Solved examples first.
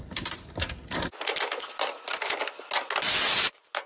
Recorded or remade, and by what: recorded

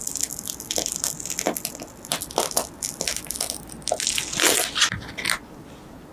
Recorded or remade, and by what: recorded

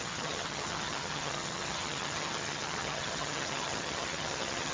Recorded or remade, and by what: remade, vocoder, HiFi-GAN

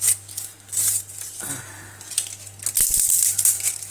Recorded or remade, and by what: recorded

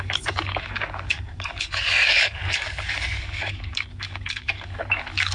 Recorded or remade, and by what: remade, codec, DAC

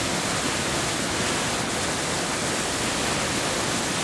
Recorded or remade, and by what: recorded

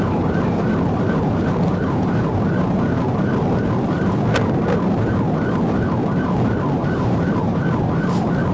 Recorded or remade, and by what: remade, vocoder, BigVGAN v2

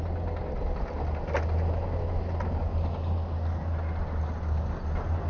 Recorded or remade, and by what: recorded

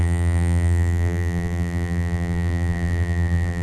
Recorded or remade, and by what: remade, vocoder, BigVGAN v2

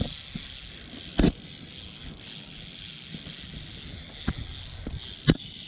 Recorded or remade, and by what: recorded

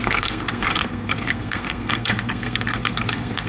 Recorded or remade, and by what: remade, codec, SNAC